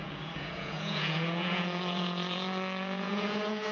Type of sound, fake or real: fake